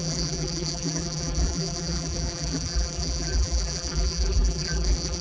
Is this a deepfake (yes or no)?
yes